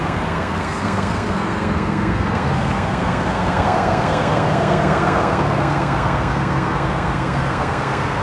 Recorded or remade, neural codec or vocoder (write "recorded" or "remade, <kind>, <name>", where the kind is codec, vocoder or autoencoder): remade, codec, SNAC